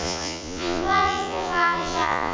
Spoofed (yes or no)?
yes